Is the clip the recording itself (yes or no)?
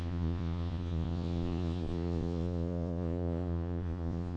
no